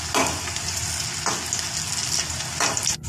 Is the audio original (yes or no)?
yes